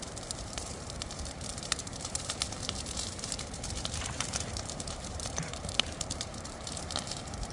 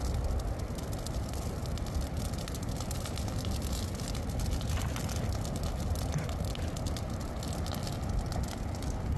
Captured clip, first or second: second